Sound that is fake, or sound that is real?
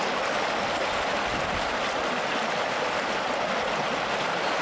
real